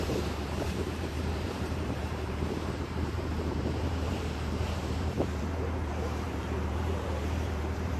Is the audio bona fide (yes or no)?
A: no